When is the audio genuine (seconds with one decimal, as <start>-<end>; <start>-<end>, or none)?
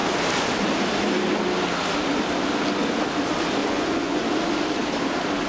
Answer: 0.0-3.6; 4.2-5.5